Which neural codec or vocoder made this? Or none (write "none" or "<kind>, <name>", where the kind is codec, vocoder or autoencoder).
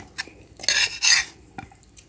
none